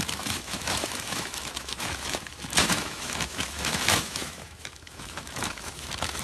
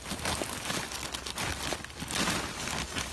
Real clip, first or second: second